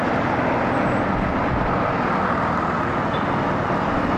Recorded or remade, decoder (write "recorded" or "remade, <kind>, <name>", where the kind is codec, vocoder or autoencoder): recorded